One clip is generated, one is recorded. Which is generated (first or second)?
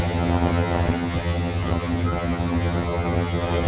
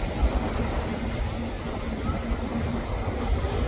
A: first